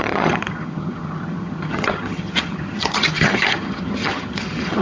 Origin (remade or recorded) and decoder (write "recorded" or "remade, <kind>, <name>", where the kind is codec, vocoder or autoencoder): remade, vocoder, HiFi-GAN